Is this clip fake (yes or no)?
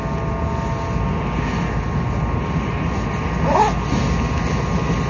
no